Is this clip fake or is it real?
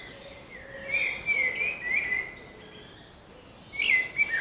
real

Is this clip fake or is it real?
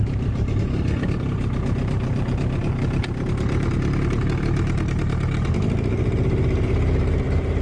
real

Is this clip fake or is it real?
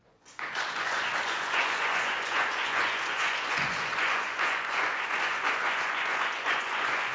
fake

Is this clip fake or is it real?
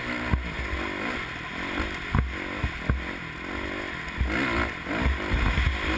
real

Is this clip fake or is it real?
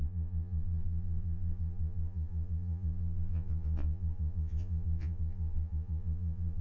fake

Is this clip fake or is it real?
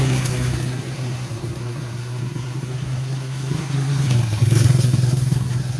fake